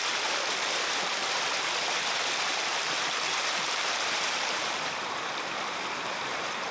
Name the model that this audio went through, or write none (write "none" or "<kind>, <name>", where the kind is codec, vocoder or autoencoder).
vocoder, BigVGAN v2